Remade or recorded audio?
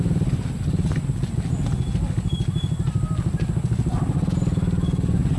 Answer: recorded